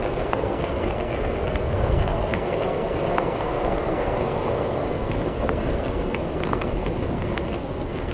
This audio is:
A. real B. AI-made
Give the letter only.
B